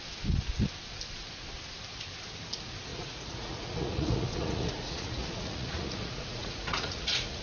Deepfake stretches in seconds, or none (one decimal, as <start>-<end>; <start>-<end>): 2.9-7.4